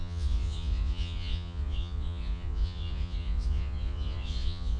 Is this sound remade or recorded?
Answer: remade